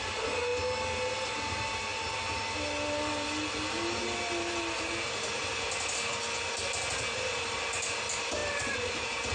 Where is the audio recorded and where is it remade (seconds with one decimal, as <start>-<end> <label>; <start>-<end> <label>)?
0.0-9.3 recorded